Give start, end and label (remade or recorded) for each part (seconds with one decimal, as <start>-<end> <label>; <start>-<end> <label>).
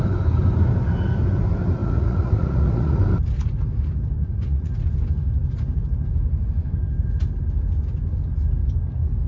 0.0-1.8 recorded; 1.8-3.0 remade; 3.0-4.2 recorded; 4.2-4.7 remade; 4.7-9.3 recorded